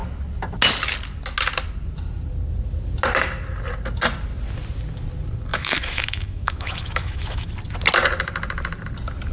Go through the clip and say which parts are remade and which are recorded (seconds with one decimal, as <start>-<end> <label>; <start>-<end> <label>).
0.0-5.5 recorded; 5.5-7.5 remade; 7.5-9.3 recorded